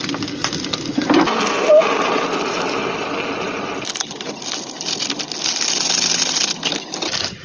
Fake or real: real